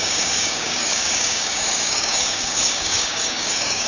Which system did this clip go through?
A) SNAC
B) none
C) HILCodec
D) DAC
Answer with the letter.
D